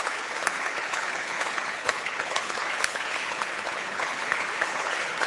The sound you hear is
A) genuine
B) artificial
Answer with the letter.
B